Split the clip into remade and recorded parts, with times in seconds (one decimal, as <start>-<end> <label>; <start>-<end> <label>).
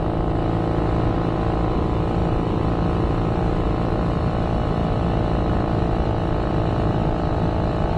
0.0-8.0 recorded